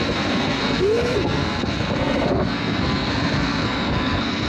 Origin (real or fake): fake